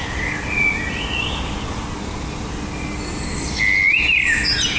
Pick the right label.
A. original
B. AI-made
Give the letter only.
A